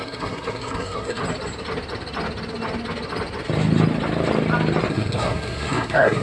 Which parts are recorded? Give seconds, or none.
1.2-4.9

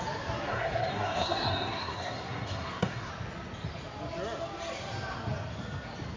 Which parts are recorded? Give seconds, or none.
0.0-0.5; 3.1-6.2

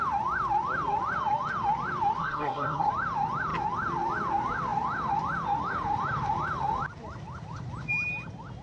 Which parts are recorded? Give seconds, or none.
0.0-2.2; 2.9-8.6

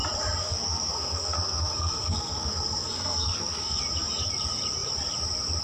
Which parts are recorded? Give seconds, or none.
0.0-0.4; 3.8-5.6

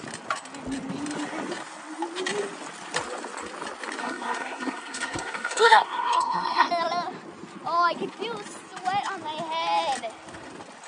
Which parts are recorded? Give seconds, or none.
0.0-4.0; 6.7-10.9